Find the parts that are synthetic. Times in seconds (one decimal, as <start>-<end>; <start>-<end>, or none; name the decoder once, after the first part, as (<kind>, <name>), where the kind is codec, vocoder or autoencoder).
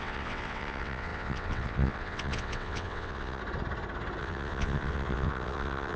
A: 0.0-3.4 (vocoder, WaveNeXt); 4.2-6.0